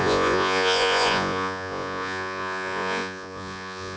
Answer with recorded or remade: remade